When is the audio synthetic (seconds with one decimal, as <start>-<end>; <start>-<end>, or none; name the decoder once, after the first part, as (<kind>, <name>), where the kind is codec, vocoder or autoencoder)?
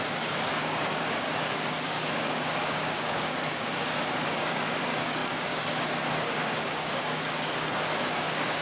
0.0-8.6 (codec, DAC)